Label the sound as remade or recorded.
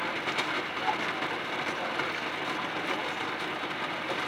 recorded